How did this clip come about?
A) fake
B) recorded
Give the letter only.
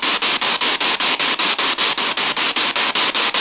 B